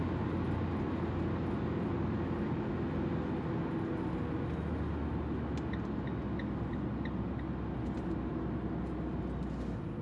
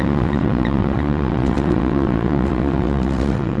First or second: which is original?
first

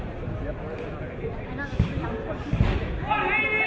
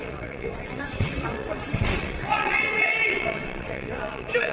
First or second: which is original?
first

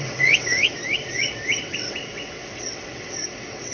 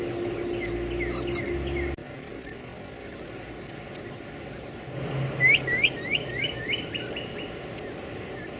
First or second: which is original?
second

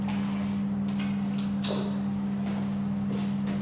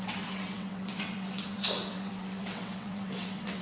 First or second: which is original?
first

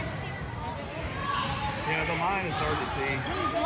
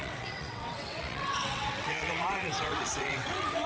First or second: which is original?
first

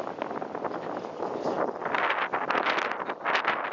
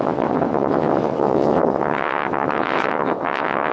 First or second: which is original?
first